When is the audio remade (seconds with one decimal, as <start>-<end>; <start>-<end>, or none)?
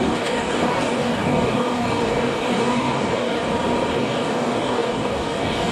0.0-3.4; 3.9-5.7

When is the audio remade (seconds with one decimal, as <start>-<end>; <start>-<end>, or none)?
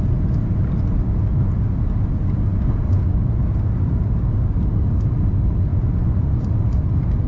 5.7-6.5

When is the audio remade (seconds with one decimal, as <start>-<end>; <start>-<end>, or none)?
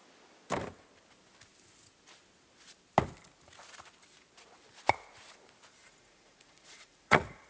5.8-7.5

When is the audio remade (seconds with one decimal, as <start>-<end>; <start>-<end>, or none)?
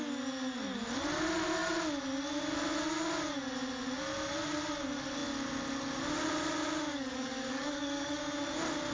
6.9-8.2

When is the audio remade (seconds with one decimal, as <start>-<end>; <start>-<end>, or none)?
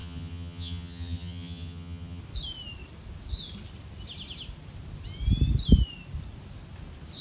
0.0-2.2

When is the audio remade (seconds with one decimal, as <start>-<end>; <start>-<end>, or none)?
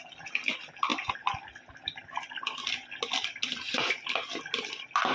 none